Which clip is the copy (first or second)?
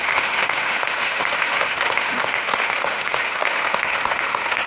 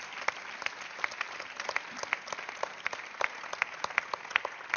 first